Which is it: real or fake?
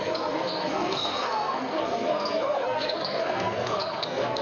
fake